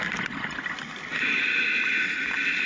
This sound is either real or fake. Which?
real